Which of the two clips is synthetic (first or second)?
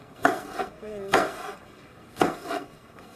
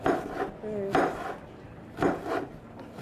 first